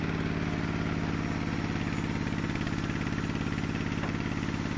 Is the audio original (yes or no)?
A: yes